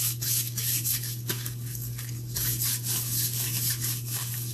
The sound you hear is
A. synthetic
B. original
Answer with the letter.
A